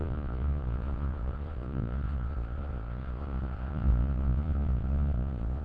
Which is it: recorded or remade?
remade